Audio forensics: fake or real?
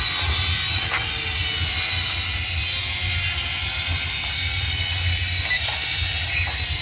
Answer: real